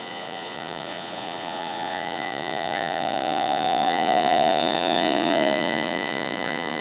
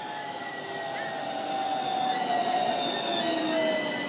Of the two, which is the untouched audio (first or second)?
second